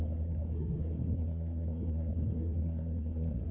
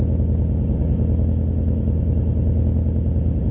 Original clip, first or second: second